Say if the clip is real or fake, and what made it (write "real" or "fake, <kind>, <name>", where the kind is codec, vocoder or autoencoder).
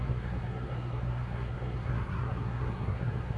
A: fake, codec, SNAC